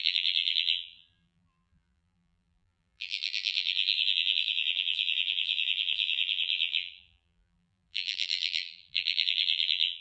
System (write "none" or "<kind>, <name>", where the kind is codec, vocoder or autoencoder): vocoder, BigVGAN v2